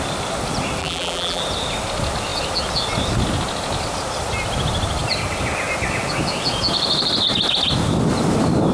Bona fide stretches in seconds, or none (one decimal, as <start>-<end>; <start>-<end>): 0.0-0.8; 1.4-8.7